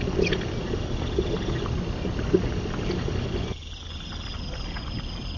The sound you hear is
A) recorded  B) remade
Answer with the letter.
A